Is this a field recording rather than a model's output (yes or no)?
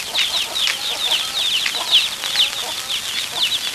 yes